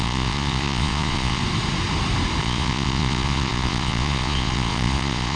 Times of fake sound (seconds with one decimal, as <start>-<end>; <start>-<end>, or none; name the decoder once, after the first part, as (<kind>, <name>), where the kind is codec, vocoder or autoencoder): 0.0-1.4 (vocoder, Vocos); 2.4-5.4